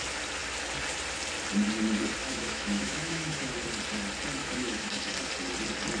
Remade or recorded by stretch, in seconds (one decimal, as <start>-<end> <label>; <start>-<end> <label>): 0.0-2.2 recorded; 2.2-3.5 remade; 3.5-4.4 recorded; 4.4-5.1 remade; 5.1-6.0 recorded

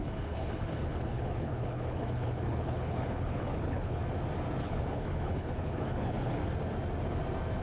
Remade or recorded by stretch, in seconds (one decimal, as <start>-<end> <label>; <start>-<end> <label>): 0.0-4.0 remade; 4.0-4.6 recorded; 4.6-6.4 remade; 6.4-7.6 recorded